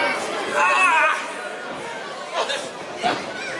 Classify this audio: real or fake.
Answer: real